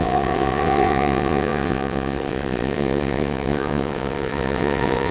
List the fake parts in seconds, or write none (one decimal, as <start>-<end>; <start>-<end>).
0.0-5.1